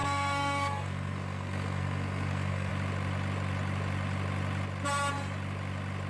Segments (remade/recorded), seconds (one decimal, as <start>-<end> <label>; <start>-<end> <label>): 0.0-2.7 remade; 2.7-6.1 recorded